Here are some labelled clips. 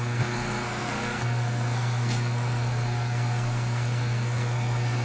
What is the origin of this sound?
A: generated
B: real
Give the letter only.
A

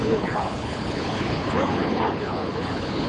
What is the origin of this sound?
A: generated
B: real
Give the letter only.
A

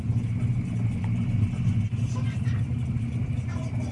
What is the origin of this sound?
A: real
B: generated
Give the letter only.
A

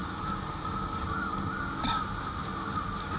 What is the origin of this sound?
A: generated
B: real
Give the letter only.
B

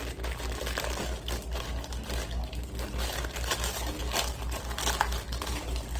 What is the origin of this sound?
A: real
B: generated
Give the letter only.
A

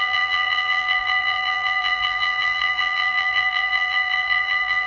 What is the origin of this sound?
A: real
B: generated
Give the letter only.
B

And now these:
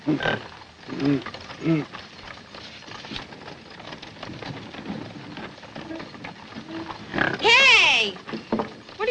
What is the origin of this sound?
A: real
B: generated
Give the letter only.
A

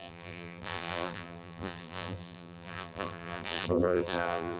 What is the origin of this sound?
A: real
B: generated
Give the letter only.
B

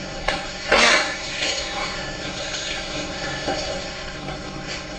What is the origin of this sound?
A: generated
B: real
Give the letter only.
A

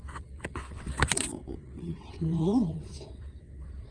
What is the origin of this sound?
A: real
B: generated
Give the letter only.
B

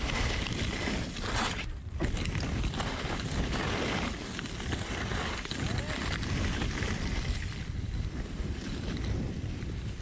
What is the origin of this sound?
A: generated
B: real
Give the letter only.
B